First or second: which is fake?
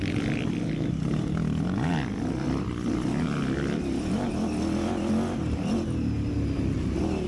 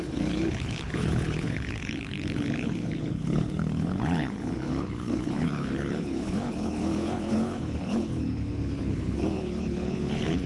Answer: second